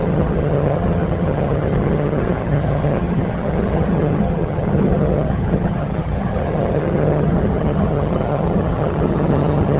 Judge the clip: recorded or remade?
remade